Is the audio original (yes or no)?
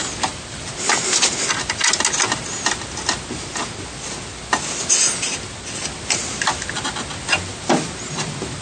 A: yes